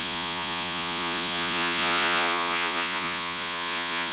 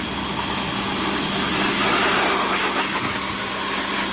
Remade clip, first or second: first